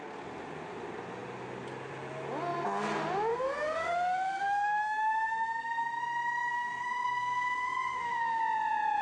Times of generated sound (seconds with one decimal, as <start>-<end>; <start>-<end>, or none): 3.3-6.0; 6.5-8.4

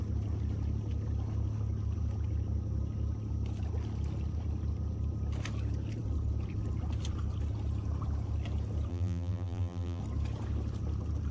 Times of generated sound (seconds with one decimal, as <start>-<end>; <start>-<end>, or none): 8.9-10.0

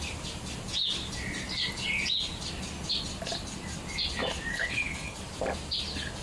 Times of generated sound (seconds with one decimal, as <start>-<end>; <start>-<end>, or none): 4.5-5.2

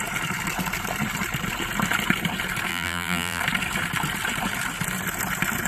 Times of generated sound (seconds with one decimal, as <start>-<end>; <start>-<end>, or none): 2.7-3.4

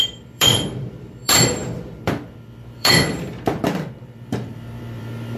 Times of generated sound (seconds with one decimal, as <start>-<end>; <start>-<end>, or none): 0.0-5.4

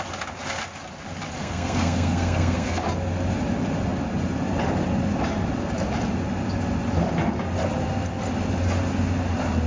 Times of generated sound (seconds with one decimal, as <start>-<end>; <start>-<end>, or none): 1.4-2.8

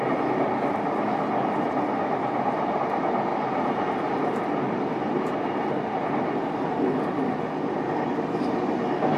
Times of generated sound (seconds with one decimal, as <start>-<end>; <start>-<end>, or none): none

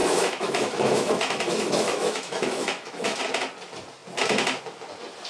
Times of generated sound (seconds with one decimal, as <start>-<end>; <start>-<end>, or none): 0.0-3.2